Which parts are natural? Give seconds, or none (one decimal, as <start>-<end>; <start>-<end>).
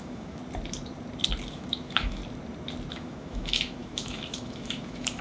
0.4-1.5; 2.2-2.9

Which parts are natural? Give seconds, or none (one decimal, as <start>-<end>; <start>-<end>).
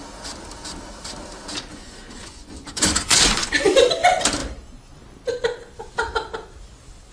0.0-1.7; 3.6-7.1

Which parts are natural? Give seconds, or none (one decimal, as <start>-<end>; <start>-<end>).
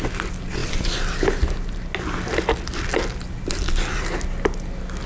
0.0-5.1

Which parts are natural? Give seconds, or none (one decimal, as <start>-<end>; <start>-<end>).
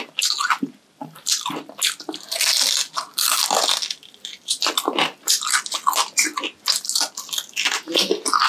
0.0-8.5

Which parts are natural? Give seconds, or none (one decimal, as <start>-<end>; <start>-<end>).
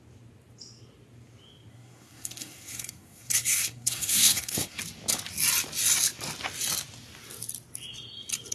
0.0-1.7; 4.8-8.5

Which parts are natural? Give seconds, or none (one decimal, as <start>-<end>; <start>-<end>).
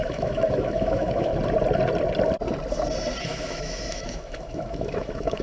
1.3-3.2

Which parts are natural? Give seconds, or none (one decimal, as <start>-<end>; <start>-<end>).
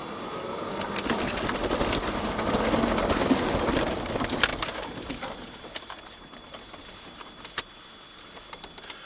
0.0-9.1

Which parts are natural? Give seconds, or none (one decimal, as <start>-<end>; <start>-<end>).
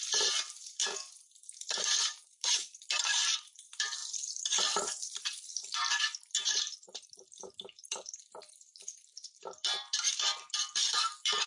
0.8-1.8